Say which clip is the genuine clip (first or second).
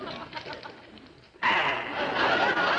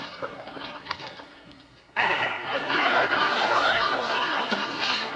first